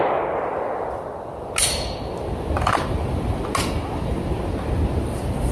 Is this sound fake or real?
real